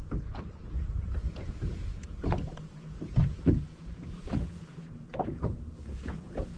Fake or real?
fake